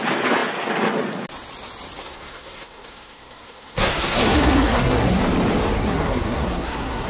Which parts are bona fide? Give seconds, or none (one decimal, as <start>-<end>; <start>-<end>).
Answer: 0.0-2.0; 5.2-5.8